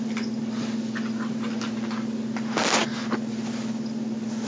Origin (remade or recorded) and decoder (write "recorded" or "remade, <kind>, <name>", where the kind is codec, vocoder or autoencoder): recorded